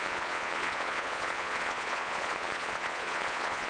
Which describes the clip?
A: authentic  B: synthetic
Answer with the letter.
B